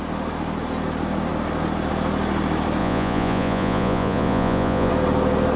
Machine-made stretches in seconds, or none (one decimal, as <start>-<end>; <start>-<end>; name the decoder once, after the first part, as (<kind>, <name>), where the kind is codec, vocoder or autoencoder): 2.8-4.9 (vocoder, Vocos)